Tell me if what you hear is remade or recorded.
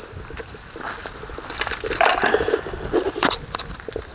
recorded